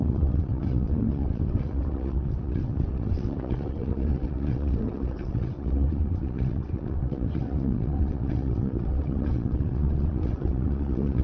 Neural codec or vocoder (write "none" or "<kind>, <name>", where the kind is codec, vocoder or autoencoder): vocoder, WaveNeXt